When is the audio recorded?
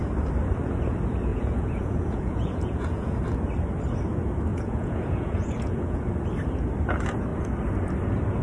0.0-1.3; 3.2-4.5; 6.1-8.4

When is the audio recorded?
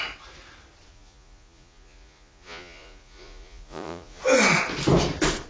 0.0-0.9; 4.2-5.5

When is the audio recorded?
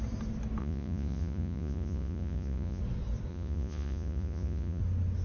0.0-0.6; 2.8-3.3; 4.8-5.2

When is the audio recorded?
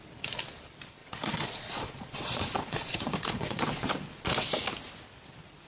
0.0-1.0; 3.9-5.7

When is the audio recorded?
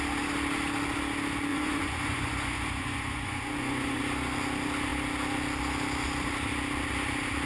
0.0-1.5; 4.0-7.5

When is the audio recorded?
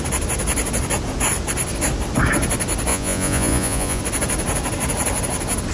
0.0-2.9; 4.0-5.7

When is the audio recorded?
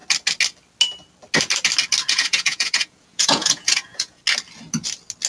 0.0-2.1; 4.2-5.3